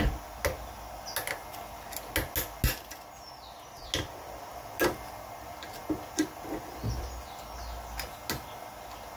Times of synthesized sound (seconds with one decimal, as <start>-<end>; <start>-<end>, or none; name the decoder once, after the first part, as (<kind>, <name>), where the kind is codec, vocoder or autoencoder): none